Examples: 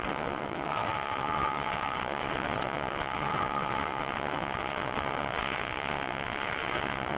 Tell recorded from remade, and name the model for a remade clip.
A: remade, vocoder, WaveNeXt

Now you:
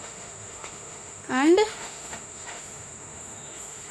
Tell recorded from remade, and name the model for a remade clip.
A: remade, autoencoder, DAC-VAE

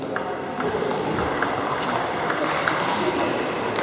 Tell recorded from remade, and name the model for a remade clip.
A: recorded